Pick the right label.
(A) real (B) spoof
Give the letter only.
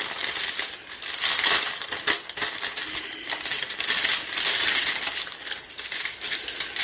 A